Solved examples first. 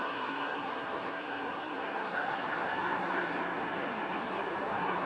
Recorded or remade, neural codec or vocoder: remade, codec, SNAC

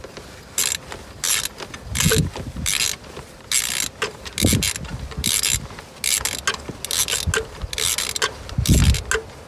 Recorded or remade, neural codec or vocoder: recorded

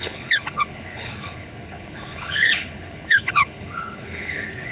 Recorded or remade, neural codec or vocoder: remade, codec, HILCodec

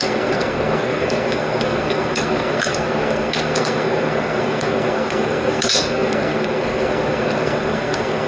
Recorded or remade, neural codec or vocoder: remade, codec, SNAC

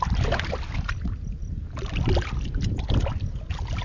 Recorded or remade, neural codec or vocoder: recorded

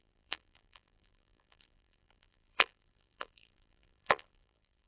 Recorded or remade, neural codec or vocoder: remade, vocoder, BigVGAN v2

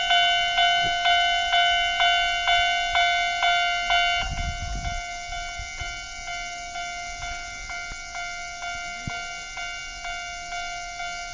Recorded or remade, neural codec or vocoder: recorded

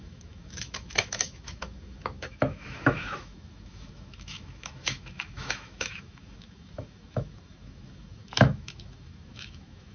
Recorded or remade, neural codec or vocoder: remade, autoencoder, DAC-VAE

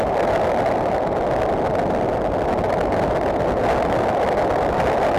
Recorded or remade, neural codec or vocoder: recorded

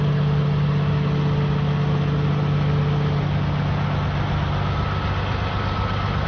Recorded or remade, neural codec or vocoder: recorded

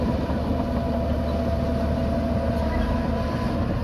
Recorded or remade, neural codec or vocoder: recorded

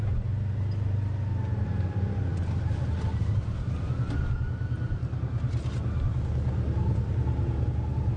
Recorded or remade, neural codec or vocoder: recorded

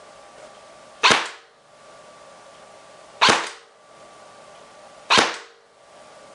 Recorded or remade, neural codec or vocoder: recorded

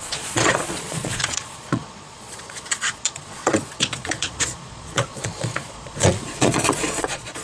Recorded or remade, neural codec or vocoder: remade, vocoder, Vocos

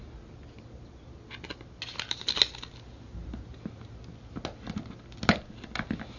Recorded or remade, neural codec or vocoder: recorded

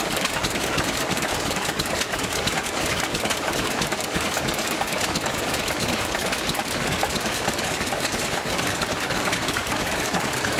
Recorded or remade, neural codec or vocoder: remade, codec, DAC